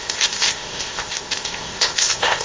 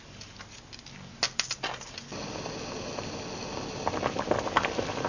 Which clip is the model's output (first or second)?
first